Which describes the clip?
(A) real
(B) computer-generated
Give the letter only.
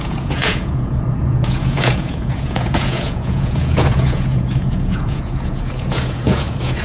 B